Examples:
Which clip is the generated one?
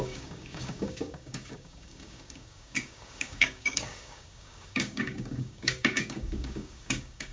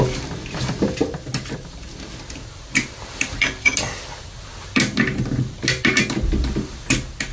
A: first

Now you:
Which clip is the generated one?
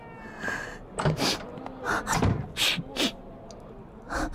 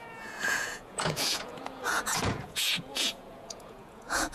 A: second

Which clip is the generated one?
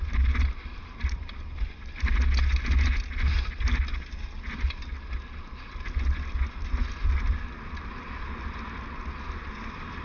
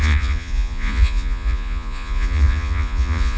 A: second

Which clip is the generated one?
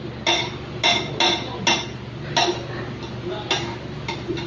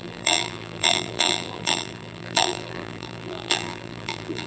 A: second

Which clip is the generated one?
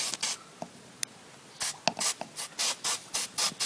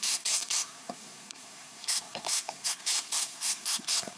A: second